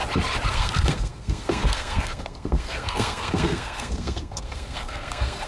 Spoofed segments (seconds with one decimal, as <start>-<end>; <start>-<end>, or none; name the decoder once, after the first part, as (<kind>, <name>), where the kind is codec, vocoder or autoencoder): 0.5-5.5 (codec, SNAC)